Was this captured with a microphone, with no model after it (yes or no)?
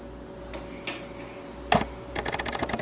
yes